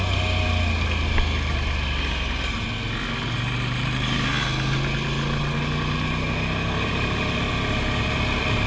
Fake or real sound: real